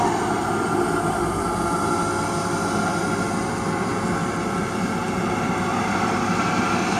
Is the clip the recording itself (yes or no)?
no